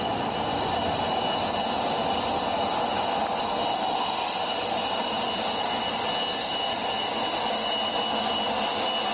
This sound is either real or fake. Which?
real